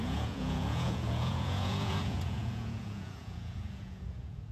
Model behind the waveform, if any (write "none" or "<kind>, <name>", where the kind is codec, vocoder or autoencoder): vocoder, Vocos